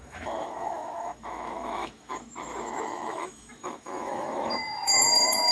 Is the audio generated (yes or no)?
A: yes